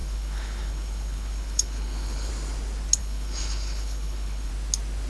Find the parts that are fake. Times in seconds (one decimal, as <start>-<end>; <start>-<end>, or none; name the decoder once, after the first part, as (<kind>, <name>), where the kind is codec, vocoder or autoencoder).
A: 0.0-2.3 (codec, HILCodec); 3.0-4.5